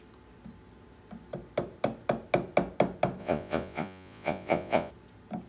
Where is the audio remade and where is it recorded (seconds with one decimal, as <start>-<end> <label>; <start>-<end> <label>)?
0.0-3.2 recorded; 3.2-4.9 remade; 4.9-5.5 recorded

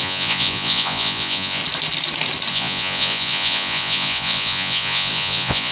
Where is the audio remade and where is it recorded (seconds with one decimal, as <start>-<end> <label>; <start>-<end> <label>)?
0.0-1.6 remade; 1.6-2.5 recorded; 2.5-5.7 remade

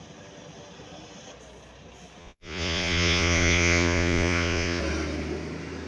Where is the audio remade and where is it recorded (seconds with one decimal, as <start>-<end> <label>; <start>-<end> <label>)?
0.0-2.2 recorded; 2.2-4.8 remade; 4.8-5.9 recorded

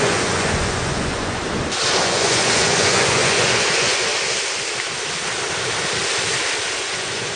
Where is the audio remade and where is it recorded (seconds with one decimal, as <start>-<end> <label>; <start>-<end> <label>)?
0.0-1.4 remade; 1.4-2.0 recorded; 2.0-4.1 remade; 4.1-6.8 recorded; 6.8-7.4 remade

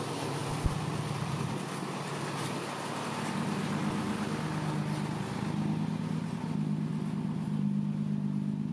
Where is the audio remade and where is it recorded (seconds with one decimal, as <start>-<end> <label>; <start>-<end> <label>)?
0.0-8.7 recorded

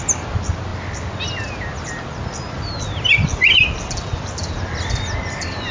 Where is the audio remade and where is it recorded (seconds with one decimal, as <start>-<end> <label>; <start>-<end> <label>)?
0.0-5.7 recorded